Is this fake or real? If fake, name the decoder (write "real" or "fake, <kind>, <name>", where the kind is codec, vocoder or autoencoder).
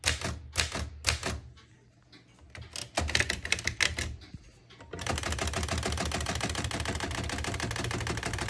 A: real